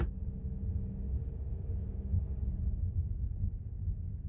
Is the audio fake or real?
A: real